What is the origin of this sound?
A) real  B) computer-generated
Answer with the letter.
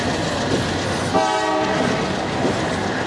A